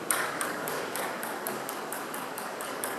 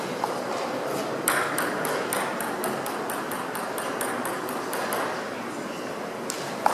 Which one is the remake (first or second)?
first